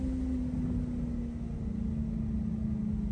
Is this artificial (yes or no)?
no